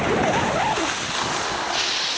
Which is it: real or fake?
real